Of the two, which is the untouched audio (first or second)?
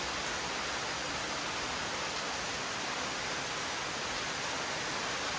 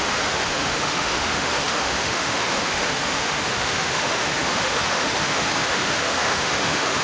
first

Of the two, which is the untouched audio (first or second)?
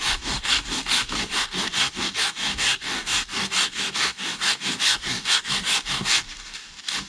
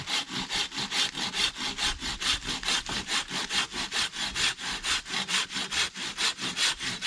second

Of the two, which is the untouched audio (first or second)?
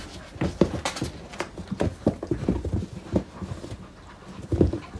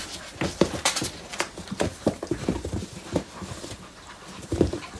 first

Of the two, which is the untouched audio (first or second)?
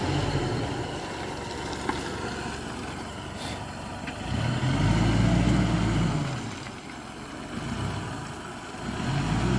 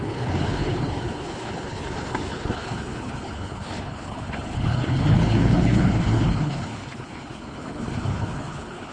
first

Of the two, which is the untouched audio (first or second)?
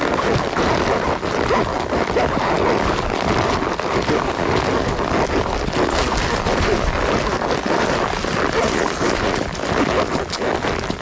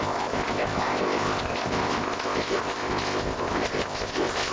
first